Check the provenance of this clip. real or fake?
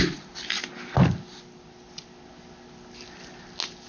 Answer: real